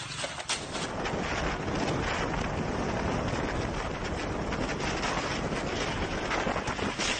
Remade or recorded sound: recorded